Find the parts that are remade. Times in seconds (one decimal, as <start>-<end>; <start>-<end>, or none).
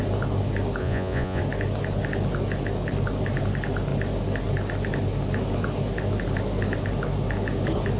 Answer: 0.8-1.4